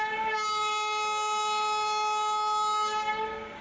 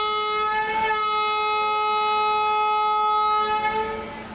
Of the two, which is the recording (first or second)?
second